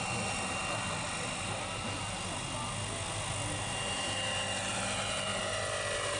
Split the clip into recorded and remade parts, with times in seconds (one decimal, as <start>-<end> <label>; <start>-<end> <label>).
0.0-6.2 recorded